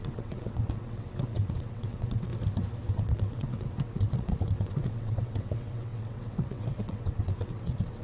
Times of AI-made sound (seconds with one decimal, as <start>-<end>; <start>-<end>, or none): 0.0-2.3; 2.9-8.0